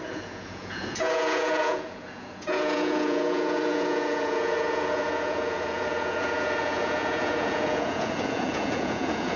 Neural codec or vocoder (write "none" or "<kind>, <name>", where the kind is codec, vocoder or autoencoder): vocoder, Vocos